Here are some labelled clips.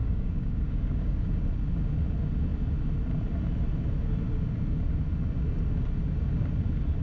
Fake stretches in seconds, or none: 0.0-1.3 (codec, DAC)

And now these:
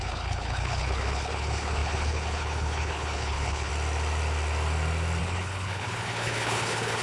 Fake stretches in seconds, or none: 0.0-3.7 (codec, HILCodec); 5.2-7.0

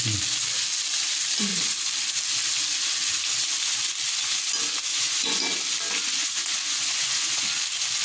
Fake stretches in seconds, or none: 4.9-5.4 (vocoder, Vocos); 6.2-7.4

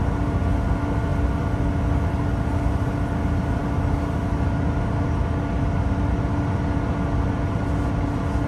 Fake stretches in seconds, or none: none

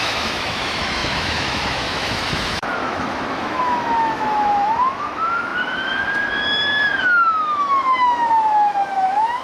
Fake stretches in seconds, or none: 0.0-9.4 (autoencoder, DAC-VAE)

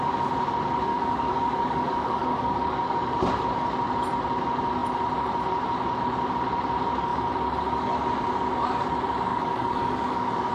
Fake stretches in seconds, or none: 0.9-3.3 (codec, DAC); 9.3-10.5